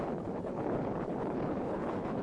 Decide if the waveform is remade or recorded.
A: remade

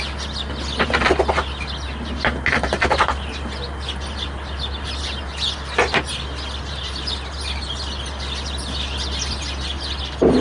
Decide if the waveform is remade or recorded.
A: recorded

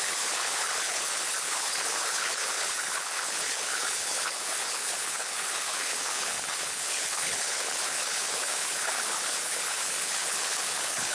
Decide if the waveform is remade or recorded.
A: remade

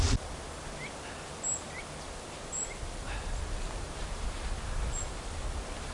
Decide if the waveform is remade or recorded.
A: recorded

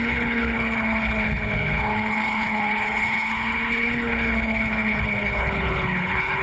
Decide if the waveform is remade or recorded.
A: remade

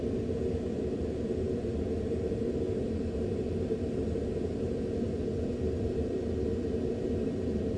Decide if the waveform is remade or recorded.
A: recorded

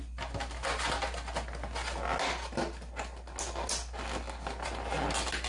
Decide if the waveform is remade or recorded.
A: recorded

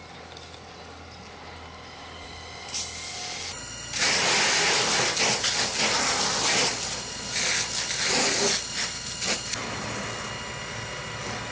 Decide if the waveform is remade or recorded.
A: recorded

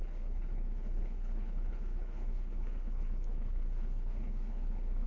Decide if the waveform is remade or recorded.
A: remade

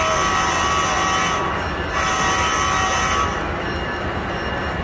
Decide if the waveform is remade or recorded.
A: recorded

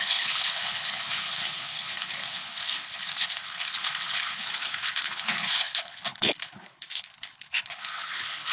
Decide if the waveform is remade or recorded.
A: remade